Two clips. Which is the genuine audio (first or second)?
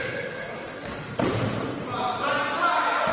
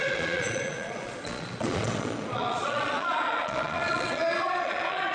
first